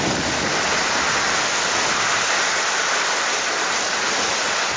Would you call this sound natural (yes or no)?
yes